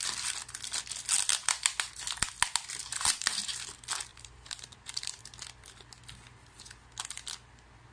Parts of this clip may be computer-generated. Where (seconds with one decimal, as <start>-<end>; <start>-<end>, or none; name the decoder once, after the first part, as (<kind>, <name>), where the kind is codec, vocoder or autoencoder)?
2.9-3.5 (vocoder, BigVGAN v2); 4.1-5.2